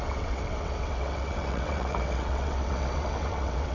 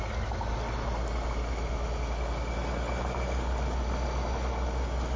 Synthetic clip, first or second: first